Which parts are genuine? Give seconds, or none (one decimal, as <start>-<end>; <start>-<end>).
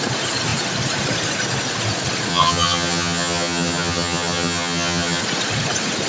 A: 0.0-2.3; 5.2-6.1